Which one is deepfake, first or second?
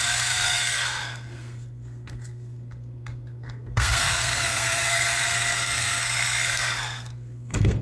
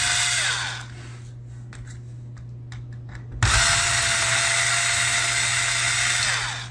first